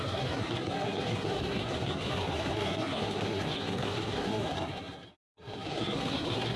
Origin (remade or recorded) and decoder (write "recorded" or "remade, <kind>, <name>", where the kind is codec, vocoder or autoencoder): remade, codec, SNAC